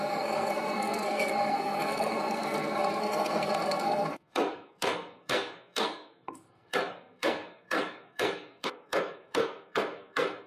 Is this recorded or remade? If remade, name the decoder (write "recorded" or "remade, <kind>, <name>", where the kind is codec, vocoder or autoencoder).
remade, codec, SNAC